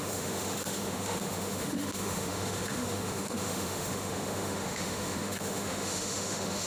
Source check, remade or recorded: remade